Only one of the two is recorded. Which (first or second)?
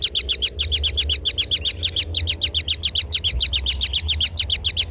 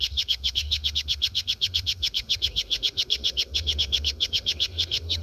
first